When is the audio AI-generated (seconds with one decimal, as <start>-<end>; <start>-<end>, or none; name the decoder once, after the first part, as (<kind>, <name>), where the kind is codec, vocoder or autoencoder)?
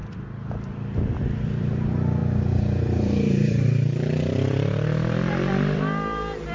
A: 0.0-6.5 (vocoder, BigVGAN v2)